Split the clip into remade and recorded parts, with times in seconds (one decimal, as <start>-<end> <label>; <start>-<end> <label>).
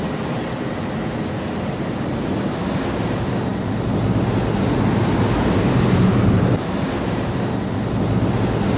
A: 0.0-8.8 recorded